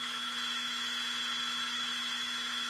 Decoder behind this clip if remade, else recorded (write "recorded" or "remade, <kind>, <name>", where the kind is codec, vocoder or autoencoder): remade, autoencoder, DAC-VAE